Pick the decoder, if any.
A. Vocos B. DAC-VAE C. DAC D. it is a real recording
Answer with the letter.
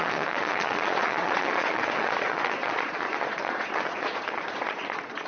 A